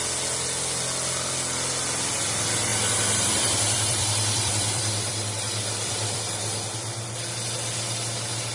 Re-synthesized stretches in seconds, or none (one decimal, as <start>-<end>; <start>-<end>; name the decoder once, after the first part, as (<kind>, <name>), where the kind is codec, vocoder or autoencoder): 2.7-6.2 (vocoder, BigVGAN v2)